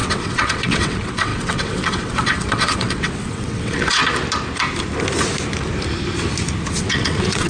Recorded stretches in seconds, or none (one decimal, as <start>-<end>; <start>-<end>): 4.0-6.7